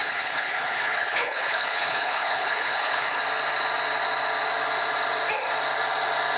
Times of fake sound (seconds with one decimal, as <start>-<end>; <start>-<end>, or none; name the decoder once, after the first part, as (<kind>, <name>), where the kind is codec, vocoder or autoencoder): 0.0-3.2 (codec, HILCodec)